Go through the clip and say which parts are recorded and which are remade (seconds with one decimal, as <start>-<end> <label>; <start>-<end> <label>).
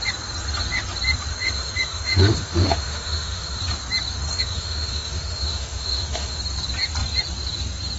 0.0-1.3 recorded; 1.3-3.6 remade; 3.6-4.3 recorded; 4.3-6.4 remade; 6.4-8.0 recorded